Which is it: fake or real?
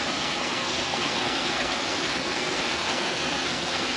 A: fake